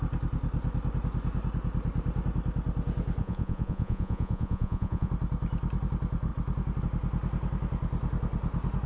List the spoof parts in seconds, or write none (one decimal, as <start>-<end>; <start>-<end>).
3.2-5.1